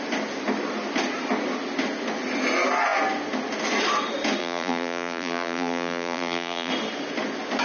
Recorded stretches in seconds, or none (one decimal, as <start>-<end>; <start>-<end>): 0.0-4.4; 6.7-7.6